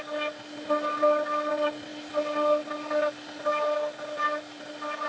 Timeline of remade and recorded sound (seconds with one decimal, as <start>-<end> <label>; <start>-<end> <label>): 0.0-5.1 recorded